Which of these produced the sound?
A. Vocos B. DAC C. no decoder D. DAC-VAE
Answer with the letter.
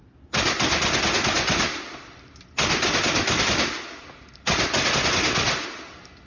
C